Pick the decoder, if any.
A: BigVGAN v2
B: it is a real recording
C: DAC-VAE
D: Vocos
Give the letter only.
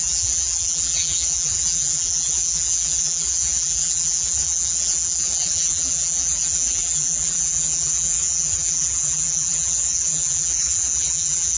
A